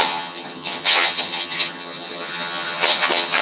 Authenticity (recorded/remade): remade